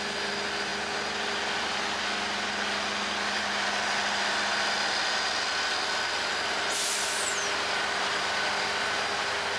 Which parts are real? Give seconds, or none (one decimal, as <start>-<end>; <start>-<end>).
0.0-9.6